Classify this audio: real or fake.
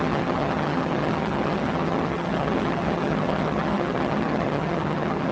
fake